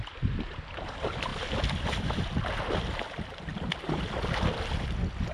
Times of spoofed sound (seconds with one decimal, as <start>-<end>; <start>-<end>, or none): none